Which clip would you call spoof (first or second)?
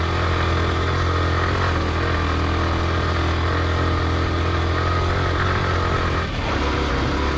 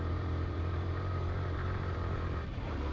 second